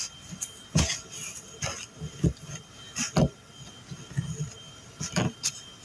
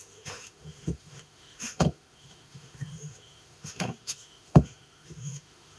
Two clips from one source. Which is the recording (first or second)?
first